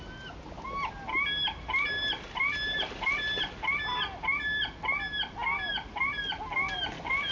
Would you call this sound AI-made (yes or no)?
no